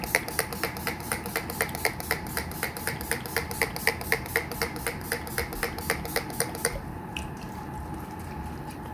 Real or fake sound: fake